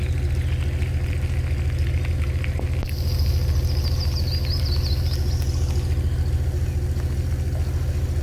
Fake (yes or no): no